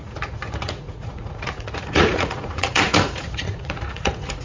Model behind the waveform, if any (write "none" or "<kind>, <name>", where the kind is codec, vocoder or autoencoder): vocoder, Vocos